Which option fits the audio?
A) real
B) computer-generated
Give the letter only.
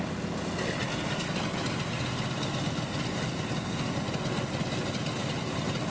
A